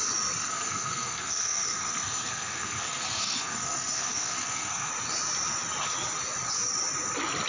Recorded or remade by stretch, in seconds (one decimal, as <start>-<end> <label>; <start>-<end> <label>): 0.0-0.4 recorded; 0.4-4.9 remade; 4.9-7.5 recorded

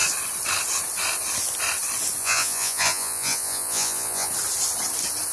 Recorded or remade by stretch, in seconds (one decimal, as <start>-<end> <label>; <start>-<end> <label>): 0.0-2.2 recorded; 2.2-4.3 remade; 4.3-5.3 recorded

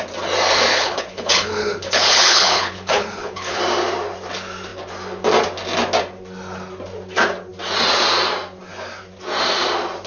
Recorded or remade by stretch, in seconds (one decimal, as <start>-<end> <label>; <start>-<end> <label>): 0.0-0.7 recorded; 0.7-3.6 remade; 3.6-10.1 recorded

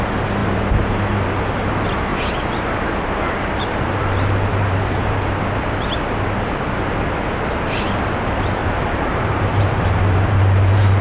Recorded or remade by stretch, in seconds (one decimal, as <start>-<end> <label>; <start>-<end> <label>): 0.0-0.4 recorded; 0.4-1.3 remade; 1.3-2.1 recorded; 2.1-5.4 remade; 5.4-8.6 recorded; 8.6-11.0 remade

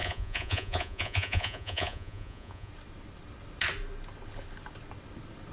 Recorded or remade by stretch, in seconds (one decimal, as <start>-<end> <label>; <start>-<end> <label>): 0.0-2.7 remade; 2.7-5.5 recorded

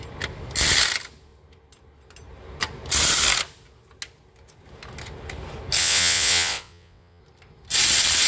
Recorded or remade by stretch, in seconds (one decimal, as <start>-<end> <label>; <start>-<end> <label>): 0.0-5.8 recorded; 5.8-7.2 remade; 7.2-8.3 recorded

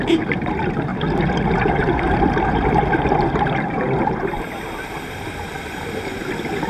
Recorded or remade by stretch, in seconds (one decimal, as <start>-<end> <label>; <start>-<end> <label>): 0.0-6.7 recorded

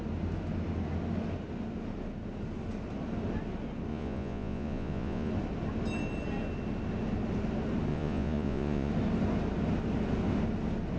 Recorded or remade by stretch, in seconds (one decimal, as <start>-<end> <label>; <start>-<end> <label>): 0.0-3.9 recorded; 3.9-5.3 remade; 5.3-7.9 recorded; 7.9-8.9 remade; 8.9-11.0 recorded